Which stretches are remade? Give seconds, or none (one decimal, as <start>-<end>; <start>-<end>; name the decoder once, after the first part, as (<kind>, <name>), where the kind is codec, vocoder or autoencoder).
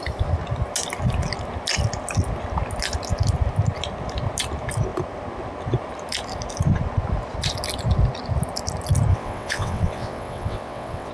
9.1-11.1 (vocoder, WaveNeXt)